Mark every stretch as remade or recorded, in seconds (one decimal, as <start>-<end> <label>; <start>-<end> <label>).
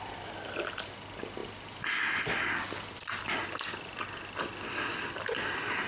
0.0-5.9 recorded